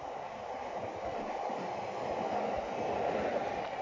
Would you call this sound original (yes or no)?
yes